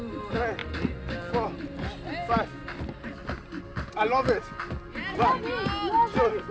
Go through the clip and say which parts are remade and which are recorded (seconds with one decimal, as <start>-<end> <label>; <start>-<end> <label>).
0.0-6.5 recorded